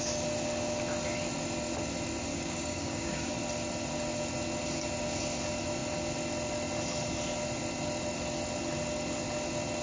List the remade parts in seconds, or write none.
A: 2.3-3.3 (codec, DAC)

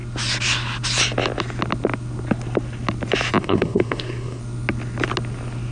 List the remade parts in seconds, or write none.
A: 3.4-4.4 (codec, SNAC)

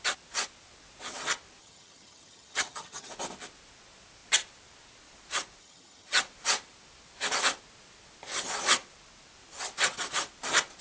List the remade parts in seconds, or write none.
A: 1.6-3.1 (vocoder, HiFi-GAN); 5.6-6.2

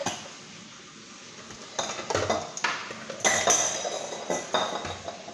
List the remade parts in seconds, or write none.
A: none

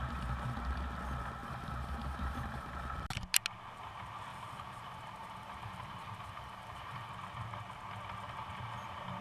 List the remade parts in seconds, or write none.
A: 1.4-2.7 (vocoder, BigVGAN v2); 4.3-7.1

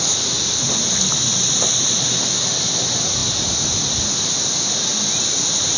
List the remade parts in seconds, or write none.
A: none